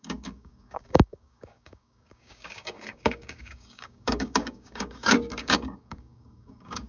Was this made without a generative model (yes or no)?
no